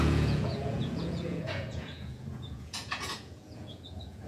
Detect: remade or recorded remade